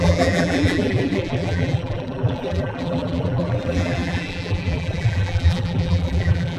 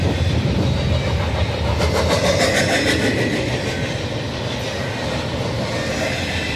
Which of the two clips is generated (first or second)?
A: first